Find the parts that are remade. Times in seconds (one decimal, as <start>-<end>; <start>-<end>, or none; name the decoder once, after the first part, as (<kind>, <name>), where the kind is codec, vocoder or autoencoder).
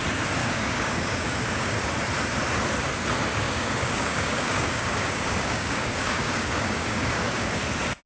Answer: 0.4-1.9 (codec, DAC); 3.3-7.6